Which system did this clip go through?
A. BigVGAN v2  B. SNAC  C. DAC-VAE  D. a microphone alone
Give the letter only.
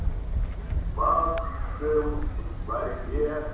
D